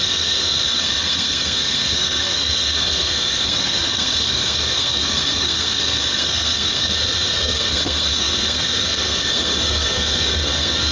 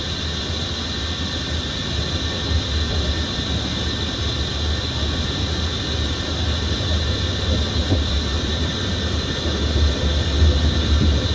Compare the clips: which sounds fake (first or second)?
first